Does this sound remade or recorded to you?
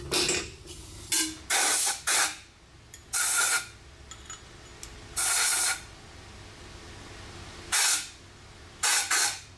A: recorded